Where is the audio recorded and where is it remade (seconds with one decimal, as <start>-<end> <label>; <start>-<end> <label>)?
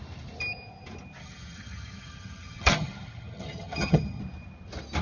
0.0-1.2 recorded; 1.2-4.2 remade; 4.2-5.0 recorded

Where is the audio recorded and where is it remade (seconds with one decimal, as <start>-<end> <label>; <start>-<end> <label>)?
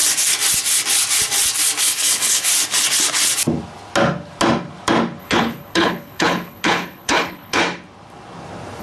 0.0-1.8 recorded; 1.8-2.5 remade; 2.5-5.2 recorded; 5.2-7.6 remade; 7.6-8.8 recorded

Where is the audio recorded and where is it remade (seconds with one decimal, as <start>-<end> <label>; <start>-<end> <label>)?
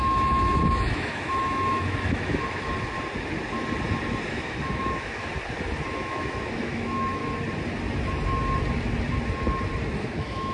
0.0-2.7 remade; 2.7-4.3 recorded; 4.3-5.3 remade; 5.3-5.9 recorded; 5.9-7.2 remade; 7.2-10.0 recorded; 10.0-10.5 remade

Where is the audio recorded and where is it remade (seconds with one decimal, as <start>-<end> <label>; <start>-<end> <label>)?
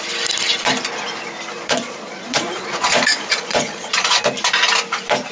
0.0-1.6 recorded; 1.6-4.2 remade; 4.2-5.3 recorded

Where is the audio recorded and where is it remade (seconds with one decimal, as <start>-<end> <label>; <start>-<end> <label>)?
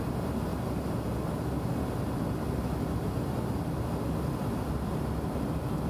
0.0-5.9 recorded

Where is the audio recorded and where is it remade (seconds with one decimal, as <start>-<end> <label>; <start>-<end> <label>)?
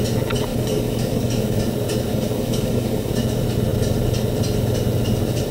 0.0-0.5 recorded; 0.5-1.6 remade; 1.6-2.1 recorded; 2.1-3.1 remade; 3.1-5.5 recorded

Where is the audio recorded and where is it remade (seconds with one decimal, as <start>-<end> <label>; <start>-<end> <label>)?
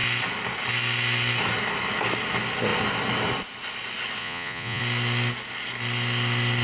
0.0-4.2 recorded; 4.2-4.8 remade; 4.8-6.6 recorded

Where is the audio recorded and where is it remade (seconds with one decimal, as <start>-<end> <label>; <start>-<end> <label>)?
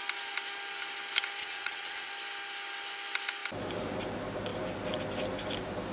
0.0-1.4 recorded; 1.4-2.1 remade; 2.1-5.9 recorded